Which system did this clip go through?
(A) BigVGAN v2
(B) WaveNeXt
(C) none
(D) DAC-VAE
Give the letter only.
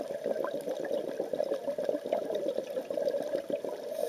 C